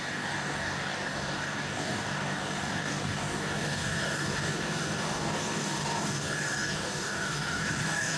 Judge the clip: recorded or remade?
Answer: remade